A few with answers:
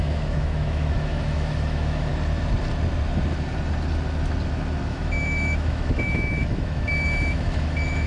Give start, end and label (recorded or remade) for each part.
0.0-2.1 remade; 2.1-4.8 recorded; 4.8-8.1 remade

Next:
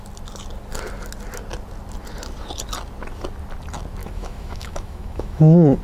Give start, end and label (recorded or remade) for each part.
0.0-4.0 recorded; 4.0-5.8 remade